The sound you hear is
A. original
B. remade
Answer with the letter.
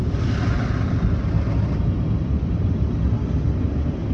A